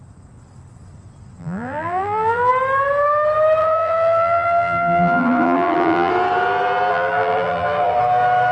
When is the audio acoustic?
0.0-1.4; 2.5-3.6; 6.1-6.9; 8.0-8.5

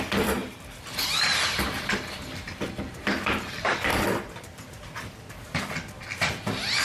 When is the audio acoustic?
0.0-0.4; 2.7-3.9; 5.0-6.8

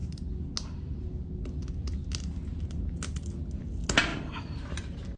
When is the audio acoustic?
0.0-5.2

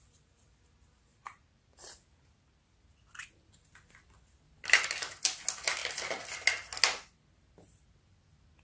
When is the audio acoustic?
0.0-1.1; 1.9-8.6

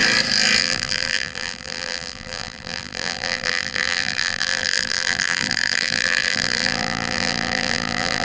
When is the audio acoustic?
0.0-0.6

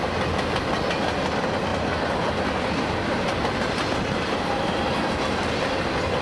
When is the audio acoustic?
0.0-6.2

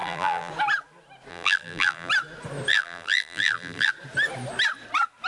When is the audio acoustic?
0.5-1.3; 2.1-2.7; 3.9-5.3